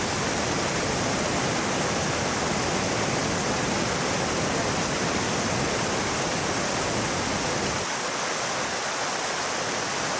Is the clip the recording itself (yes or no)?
yes